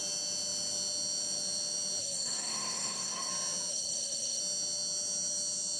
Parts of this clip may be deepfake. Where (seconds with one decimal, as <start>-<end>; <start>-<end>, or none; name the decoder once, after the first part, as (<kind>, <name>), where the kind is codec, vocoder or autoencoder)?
2.0-3.3 (codec, SNAC); 3.7-4.4